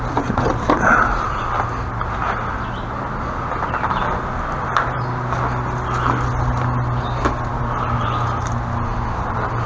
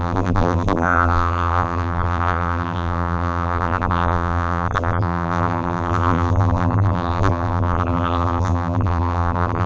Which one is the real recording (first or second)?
first